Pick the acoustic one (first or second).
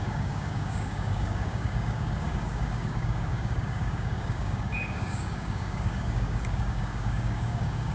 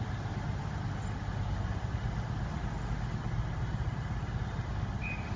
second